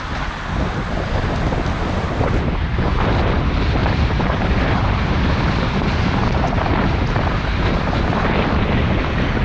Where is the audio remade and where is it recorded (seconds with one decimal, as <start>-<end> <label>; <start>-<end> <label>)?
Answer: 0.0-3.8 recorded; 3.8-8.5 remade; 8.5-9.4 recorded